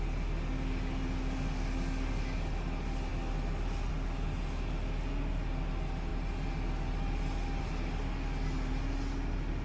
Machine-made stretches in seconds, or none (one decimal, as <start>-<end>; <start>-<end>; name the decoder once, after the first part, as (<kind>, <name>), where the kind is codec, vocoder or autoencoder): none